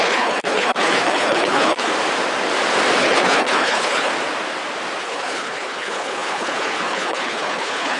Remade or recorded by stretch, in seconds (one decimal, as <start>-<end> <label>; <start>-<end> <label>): 0.0-1.9 remade; 1.9-3.0 recorded; 3.0-4.1 remade; 4.1-5.0 recorded; 5.0-8.0 remade